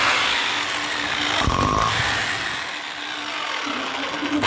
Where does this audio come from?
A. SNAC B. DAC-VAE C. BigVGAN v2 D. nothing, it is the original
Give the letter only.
D